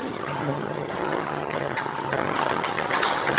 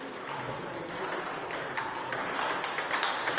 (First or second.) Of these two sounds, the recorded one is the second